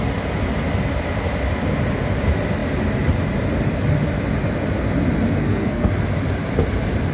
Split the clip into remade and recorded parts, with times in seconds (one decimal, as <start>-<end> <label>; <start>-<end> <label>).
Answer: 0.0-5.4 recorded; 5.4-5.9 remade; 5.9-7.1 recorded